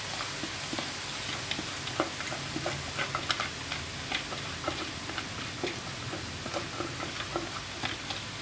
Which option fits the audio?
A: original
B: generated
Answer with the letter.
A